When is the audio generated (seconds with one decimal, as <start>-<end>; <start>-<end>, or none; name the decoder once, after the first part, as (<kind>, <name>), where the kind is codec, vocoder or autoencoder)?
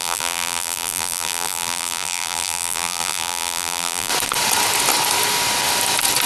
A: 0.0-4.1 (vocoder, BigVGAN v2)